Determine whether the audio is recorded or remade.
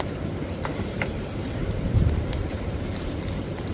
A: remade